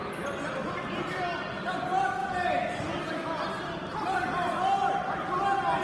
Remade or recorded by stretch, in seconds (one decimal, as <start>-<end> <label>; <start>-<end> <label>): 0.0-5.8 recorded